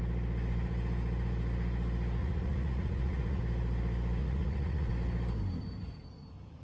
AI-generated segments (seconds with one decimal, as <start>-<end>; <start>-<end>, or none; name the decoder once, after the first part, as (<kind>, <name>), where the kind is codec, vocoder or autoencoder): 2.2-3.4 (vocoder, Vocos); 4.2-4.9